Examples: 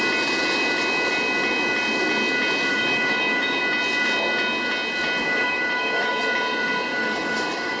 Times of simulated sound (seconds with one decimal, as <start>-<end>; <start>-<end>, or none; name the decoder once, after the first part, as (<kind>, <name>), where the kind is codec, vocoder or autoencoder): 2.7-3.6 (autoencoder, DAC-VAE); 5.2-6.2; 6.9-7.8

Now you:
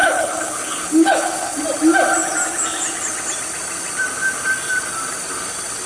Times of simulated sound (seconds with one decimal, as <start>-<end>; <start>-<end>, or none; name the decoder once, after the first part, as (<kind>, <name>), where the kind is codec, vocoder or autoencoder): 0.0-1.6 (codec, HILCodec)

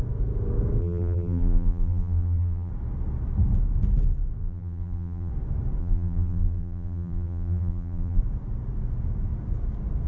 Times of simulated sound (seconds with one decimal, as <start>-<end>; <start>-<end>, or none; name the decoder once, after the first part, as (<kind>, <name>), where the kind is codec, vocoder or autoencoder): 0.8-2.7 (vocoder, BigVGAN v2); 4.4-5.3; 5.8-8.2

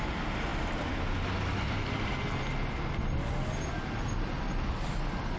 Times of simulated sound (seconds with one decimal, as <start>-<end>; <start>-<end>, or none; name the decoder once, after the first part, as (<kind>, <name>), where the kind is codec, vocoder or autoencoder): none

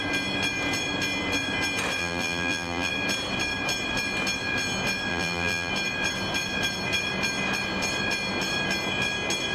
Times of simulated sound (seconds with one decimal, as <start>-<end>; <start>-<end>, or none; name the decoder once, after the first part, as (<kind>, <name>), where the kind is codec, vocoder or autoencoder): 2.0-2.9 (vocoder, BigVGAN v2); 5.1-5.7